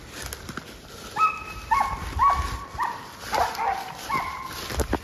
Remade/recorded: recorded